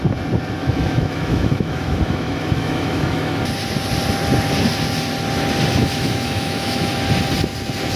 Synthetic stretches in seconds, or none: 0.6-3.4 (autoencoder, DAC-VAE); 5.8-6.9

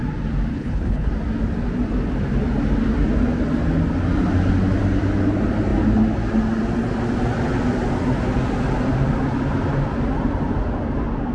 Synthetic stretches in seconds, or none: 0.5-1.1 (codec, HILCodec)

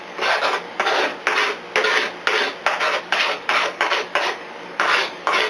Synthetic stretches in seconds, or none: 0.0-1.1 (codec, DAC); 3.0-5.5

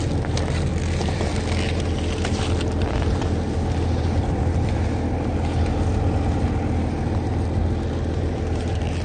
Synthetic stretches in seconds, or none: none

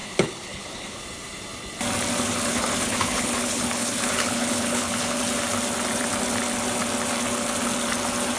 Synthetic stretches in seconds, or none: 0.0-1.0 (codec, HILCodec); 2.5-5.2